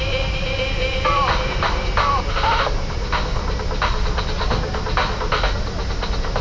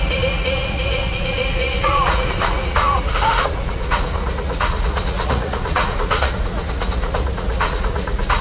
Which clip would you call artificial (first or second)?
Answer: second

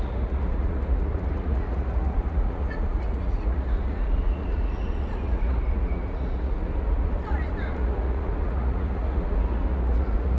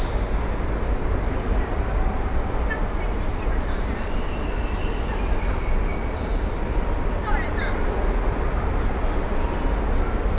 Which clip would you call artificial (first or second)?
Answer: first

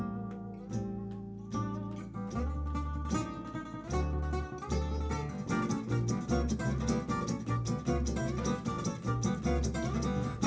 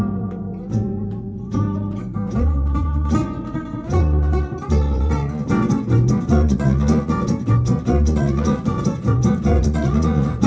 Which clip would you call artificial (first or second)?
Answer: second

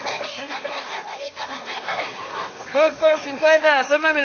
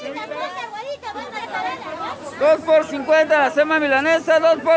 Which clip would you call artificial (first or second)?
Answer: first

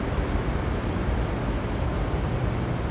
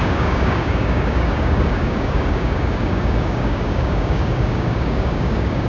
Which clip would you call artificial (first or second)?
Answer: second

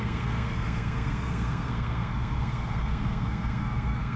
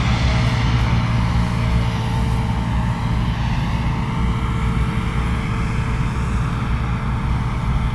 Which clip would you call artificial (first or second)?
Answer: first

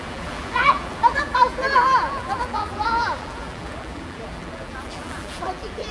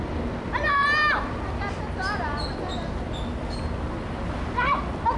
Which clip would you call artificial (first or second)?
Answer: first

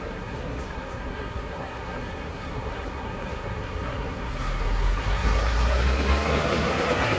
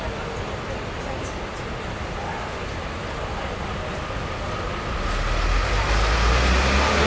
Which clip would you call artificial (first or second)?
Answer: first